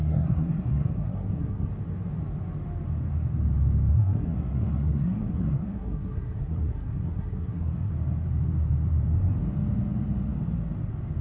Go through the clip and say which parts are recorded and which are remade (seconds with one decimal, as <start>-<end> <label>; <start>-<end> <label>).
0.0-1.7 remade; 1.7-3.9 recorded; 3.9-7.9 remade; 7.9-11.2 recorded